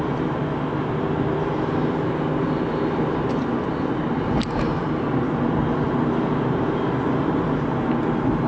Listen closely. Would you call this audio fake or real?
real